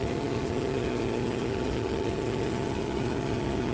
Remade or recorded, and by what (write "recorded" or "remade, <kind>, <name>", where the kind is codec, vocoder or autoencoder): remade, vocoder, HiFi-GAN